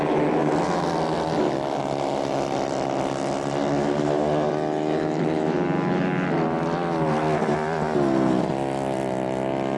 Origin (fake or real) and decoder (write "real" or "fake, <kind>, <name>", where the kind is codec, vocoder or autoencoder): real